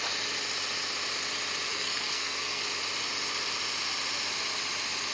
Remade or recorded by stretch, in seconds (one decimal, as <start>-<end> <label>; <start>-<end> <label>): 0.0-1.7 recorded; 1.7-2.6 remade; 2.6-5.1 recorded